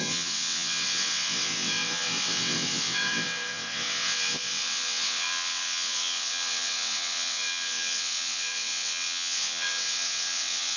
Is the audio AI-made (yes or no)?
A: yes